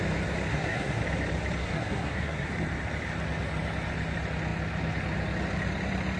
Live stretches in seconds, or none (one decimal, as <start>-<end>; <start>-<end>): 0.0-0.5; 1.0-1.6; 2.5-6.2